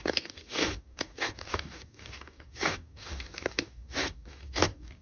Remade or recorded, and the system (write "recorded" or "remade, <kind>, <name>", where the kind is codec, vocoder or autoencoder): remade, codec, DAC